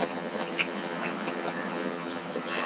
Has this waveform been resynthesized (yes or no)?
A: yes